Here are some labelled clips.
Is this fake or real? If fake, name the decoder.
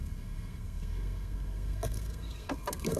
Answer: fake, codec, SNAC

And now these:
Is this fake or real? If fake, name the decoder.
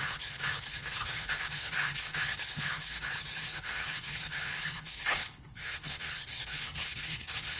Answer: fake, codec, HILCodec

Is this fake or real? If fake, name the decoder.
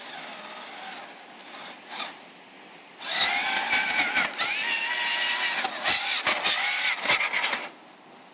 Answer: real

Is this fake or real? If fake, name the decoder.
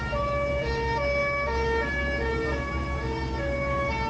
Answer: real